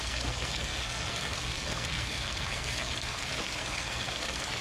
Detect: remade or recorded remade